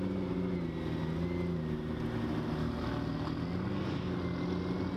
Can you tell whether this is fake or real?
real